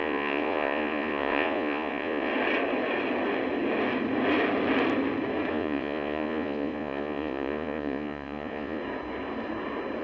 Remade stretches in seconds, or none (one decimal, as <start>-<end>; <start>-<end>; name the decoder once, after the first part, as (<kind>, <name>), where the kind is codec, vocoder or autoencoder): 0.0-2.3 (vocoder, Vocos); 5.5-8.8